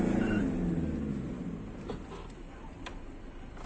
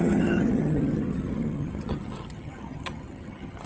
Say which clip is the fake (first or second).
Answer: second